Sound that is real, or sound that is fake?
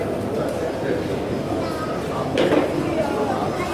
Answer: real